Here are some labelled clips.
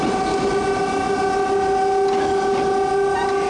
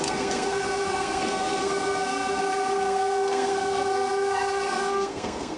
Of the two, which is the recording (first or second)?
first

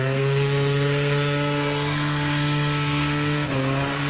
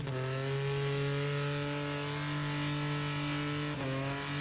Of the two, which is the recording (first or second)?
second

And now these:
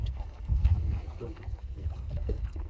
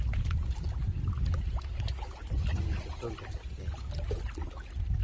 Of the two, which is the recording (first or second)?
second